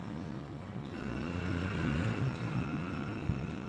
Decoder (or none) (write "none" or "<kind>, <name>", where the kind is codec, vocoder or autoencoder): vocoder, Vocos